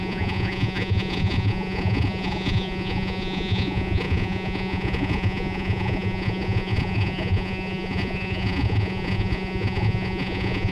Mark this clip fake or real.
fake